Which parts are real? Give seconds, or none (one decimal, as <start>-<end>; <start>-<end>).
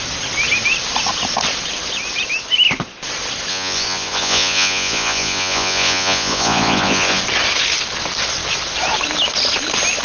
0.0-3.5; 7.2-10.0